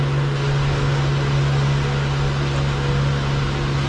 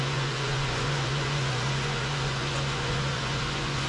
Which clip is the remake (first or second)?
second